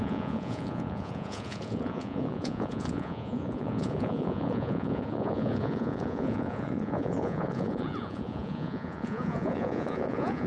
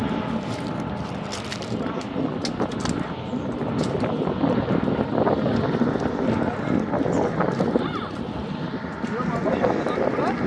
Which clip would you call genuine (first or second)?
second